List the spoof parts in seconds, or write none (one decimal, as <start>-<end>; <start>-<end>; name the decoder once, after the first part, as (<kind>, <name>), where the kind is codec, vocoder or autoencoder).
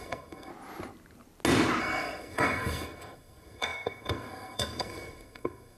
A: 0.0-0.5 (codec, SNAC); 1.8-5.8